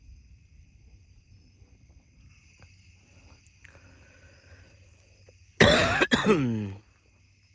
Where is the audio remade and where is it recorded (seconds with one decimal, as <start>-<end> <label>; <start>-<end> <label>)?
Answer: 0.0-7.5 recorded